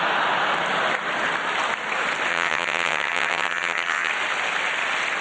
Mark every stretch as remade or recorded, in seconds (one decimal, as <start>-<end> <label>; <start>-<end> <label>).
0.0-2.3 recorded; 2.3-4.1 remade; 4.1-5.2 recorded